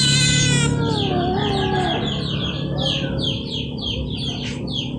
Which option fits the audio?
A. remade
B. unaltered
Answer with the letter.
B